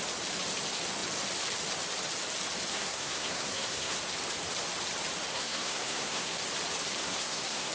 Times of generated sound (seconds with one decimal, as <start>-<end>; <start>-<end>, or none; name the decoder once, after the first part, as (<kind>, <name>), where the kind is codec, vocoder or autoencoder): 2.7-4.0 (codec, SNAC); 5.3-6.4; 7.0-7.7